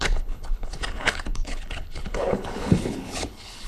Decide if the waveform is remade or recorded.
remade